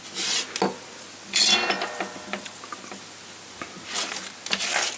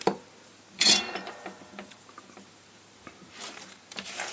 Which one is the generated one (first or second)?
second